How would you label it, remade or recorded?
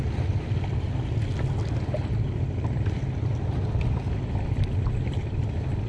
recorded